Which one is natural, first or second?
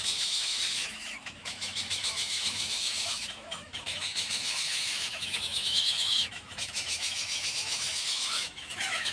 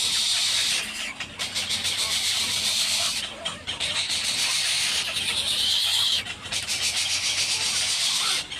second